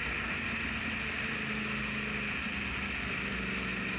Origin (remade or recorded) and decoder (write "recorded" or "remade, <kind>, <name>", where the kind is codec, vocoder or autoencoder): recorded